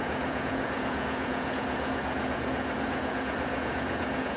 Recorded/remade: remade